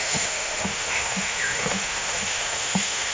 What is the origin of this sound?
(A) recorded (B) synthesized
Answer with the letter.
B